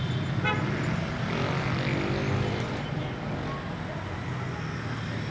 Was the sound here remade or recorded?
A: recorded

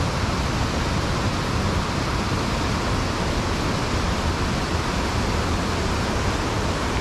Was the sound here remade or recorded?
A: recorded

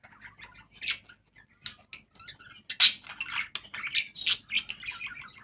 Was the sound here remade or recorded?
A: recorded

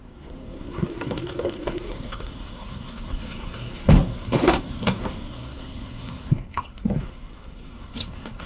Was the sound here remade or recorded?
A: remade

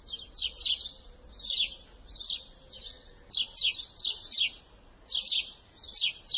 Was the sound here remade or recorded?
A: recorded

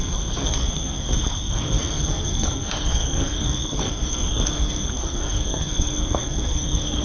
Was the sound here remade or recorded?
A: remade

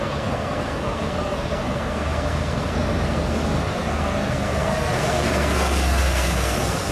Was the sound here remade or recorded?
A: remade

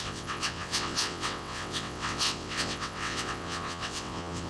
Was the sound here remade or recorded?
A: remade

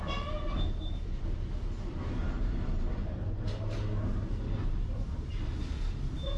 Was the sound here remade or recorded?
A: recorded